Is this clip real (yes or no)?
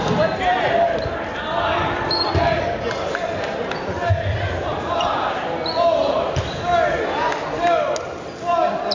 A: yes